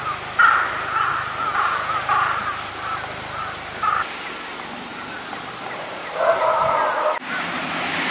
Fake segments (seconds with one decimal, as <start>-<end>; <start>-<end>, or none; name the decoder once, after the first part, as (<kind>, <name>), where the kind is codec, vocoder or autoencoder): none